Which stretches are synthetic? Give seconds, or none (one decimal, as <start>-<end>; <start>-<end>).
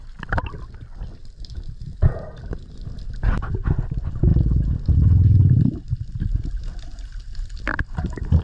none